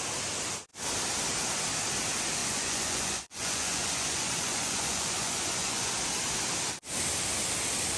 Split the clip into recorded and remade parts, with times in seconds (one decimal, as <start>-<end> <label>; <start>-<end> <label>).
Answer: 0.0-2.4 recorded; 2.4-5.9 remade; 5.9-8.0 recorded